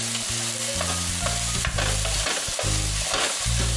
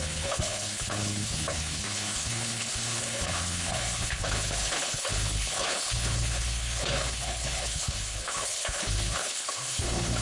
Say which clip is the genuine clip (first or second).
first